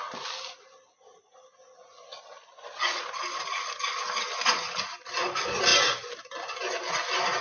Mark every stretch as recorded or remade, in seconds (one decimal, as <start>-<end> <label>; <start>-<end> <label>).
0.0-7.4 recorded